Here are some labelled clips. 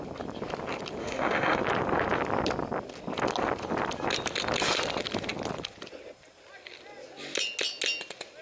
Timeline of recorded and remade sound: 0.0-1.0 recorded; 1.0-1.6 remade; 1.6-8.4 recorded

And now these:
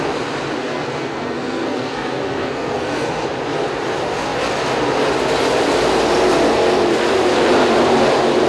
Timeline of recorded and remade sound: 0.0-0.6 recorded; 0.6-3.1 remade; 3.1-8.5 recorded

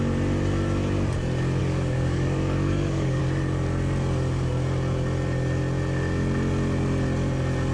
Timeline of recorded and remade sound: 0.0-1.6 recorded; 1.6-3.2 remade; 3.2-7.7 recorded

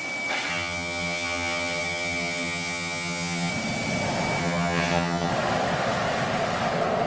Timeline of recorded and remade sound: 0.0-0.5 recorded; 0.5-3.5 remade; 3.5-4.4 recorded; 4.4-5.3 remade; 5.3-7.1 recorded

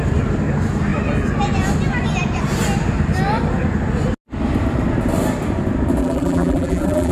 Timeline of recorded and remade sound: 0.0-6.0 recorded; 6.0-7.1 remade

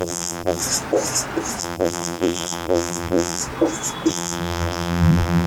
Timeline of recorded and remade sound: 0.0-0.6 remade; 0.6-1.6 recorded; 1.6-3.4 remade; 3.4-4.1 recorded; 4.1-5.5 remade